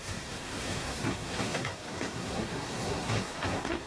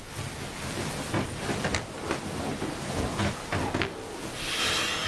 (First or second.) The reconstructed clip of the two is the first